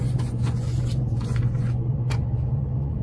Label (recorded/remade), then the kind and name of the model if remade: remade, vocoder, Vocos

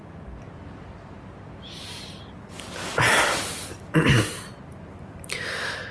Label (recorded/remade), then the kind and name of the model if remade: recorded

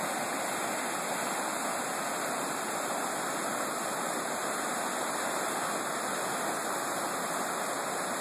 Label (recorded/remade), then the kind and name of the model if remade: recorded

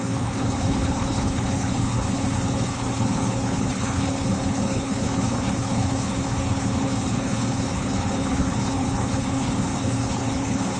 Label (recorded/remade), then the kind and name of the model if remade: remade, codec, HILCodec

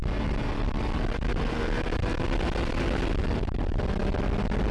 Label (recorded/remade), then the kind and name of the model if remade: recorded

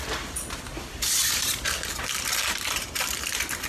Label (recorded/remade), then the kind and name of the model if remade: remade, vocoder, BigVGAN v2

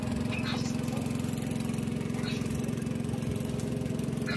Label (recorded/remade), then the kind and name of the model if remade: recorded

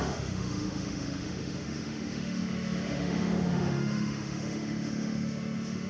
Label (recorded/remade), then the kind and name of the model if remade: remade, autoencoder, DAC-VAE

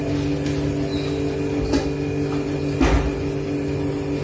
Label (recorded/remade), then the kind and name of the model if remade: recorded